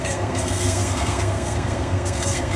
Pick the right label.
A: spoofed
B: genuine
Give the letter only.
A